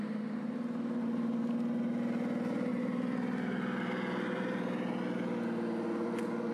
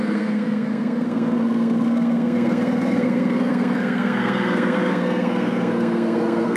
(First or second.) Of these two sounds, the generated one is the second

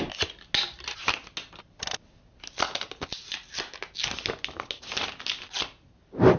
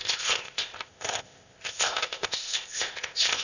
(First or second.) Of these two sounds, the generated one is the second